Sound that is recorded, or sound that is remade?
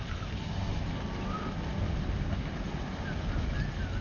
recorded